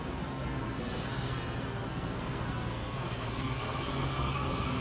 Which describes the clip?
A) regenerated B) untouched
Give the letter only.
A